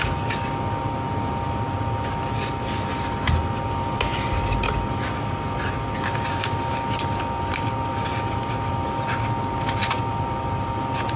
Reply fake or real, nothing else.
real